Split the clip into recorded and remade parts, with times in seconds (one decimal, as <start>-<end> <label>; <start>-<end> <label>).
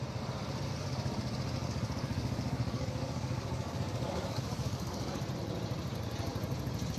0.0-1.6 recorded; 1.6-5.2 remade; 5.2-7.0 recorded